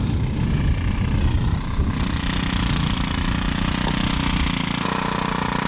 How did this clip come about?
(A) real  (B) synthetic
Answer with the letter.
A